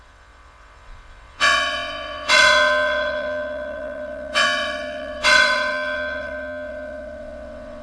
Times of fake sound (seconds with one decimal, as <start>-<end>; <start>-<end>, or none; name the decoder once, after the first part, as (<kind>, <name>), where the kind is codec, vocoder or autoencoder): 0.0-7.8 (vocoder, WaveNeXt)